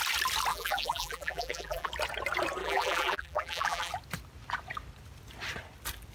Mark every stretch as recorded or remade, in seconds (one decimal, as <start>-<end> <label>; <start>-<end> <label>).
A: 0.0-0.5 recorded; 0.5-1.9 remade; 1.9-2.6 recorded; 2.6-3.9 remade; 3.9-6.1 recorded